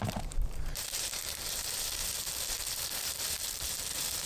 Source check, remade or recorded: remade